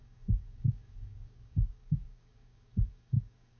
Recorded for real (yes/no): no